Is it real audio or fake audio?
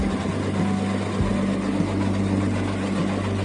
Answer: real